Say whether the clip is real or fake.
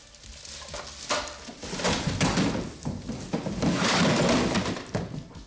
real